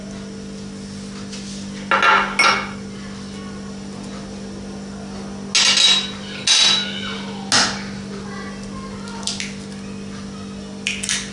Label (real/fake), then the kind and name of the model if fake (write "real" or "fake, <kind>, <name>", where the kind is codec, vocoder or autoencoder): real